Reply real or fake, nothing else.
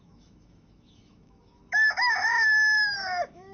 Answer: fake